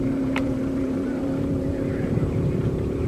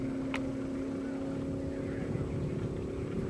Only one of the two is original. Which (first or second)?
second